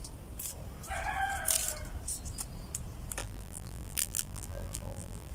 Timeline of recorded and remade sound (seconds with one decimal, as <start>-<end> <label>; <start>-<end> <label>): 0.0-3.2 recorded; 3.2-5.3 remade